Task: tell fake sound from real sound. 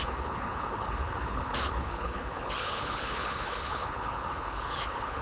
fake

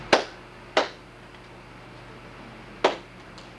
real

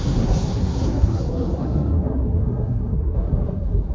fake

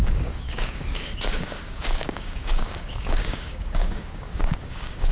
fake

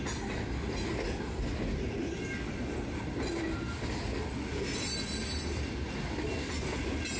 real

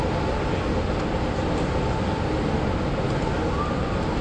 real